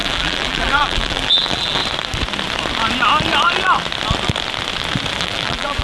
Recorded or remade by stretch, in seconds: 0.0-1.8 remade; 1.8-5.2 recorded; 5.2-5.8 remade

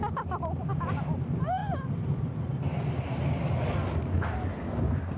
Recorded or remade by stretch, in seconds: 0.0-5.2 recorded